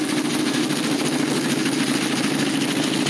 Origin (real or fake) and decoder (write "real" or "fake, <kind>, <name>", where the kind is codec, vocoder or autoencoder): real